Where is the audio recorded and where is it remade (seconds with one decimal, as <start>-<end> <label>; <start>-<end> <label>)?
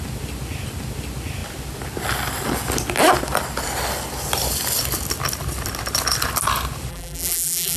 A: 0.0-6.9 recorded; 6.9-7.8 remade